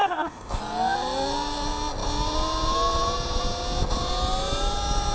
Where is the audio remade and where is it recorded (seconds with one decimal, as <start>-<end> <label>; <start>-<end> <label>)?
0.0-0.6 remade; 0.6-5.1 recorded